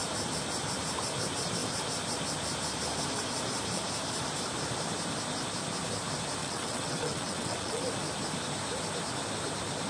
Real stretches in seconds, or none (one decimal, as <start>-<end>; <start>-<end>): 0.0-6.4; 7.8-9.9

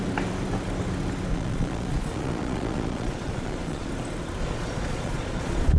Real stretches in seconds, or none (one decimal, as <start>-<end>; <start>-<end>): 0.0-1.3; 3.9-4.4

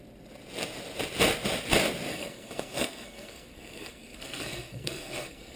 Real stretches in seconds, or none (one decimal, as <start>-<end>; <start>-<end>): 0.0-2.1

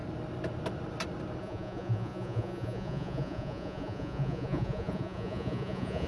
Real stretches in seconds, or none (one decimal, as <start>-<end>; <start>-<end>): 0.0-1.4

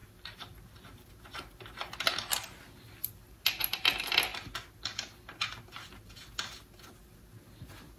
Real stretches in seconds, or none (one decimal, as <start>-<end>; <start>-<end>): 0.0-8.0

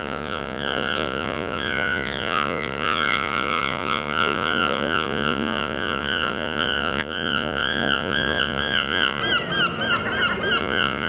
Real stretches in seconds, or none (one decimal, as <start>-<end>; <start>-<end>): 9.2-10.6

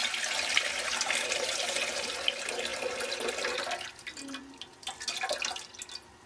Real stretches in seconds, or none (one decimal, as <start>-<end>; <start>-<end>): 0.0-6.3

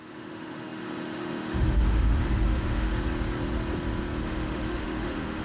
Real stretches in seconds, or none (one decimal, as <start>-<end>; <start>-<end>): 2.9-4.2